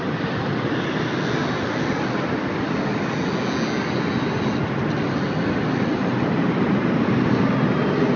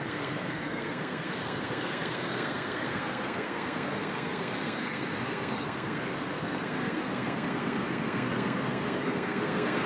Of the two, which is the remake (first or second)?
second